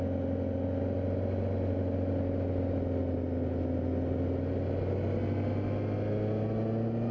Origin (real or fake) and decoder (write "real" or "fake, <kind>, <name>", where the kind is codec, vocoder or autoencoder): real